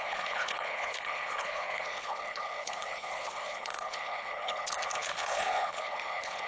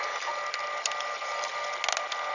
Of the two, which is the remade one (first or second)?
first